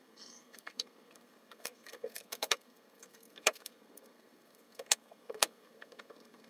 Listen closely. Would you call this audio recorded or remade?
remade